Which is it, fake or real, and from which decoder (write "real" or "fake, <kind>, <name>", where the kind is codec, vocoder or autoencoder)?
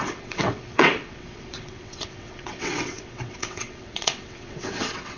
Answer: fake, vocoder, WaveNeXt